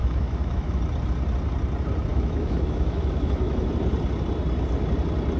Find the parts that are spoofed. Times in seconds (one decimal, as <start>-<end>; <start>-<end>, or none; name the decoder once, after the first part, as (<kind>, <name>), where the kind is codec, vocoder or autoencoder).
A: 0.0-0.8 (autoencoder, DAC-VAE); 2.1-3.7